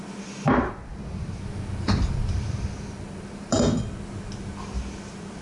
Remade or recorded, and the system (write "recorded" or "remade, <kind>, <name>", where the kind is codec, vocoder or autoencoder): recorded